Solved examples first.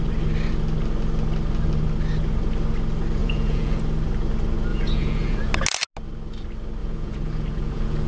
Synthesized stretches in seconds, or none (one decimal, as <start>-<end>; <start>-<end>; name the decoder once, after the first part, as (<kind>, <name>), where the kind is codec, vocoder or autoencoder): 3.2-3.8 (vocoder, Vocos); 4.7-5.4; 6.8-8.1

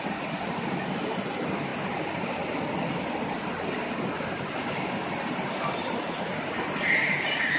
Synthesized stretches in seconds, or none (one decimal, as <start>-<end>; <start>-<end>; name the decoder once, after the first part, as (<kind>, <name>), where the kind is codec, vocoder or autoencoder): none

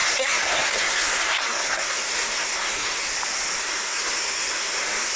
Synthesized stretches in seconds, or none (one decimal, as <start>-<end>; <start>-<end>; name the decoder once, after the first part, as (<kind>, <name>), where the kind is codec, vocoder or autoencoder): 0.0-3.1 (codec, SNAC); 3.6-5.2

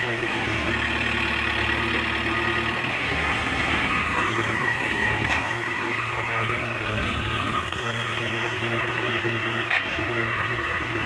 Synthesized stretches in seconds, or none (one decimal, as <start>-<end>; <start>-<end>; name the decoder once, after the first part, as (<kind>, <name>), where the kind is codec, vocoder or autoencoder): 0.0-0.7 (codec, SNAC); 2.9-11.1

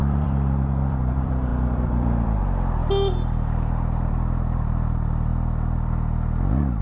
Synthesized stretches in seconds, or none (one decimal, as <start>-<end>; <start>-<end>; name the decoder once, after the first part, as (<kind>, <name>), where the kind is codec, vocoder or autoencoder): 0.0-2.8 (vocoder, BigVGAN v2); 4.1-5.3